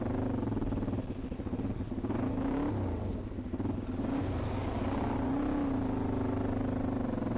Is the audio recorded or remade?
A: recorded